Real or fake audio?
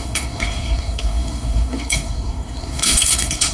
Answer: fake